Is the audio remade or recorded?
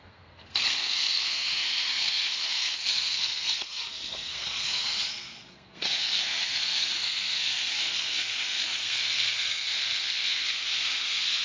remade